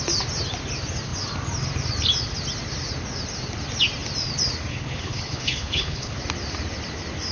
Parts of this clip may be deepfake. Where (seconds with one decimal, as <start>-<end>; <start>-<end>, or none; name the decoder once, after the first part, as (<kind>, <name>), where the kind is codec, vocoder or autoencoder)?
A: 4.7-6.2 (codec, HILCodec)